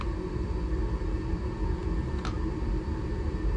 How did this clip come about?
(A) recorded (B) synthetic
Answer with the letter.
A